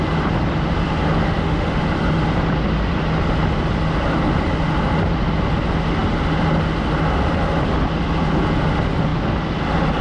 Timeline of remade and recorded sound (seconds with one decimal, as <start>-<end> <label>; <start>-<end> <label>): 0.0-1.2 recorded; 1.2-1.8 remade; 1.8-10.0 recorded